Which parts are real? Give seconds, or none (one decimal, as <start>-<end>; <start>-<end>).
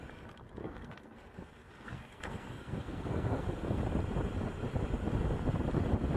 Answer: 0.0-0.6; 3.8-6.2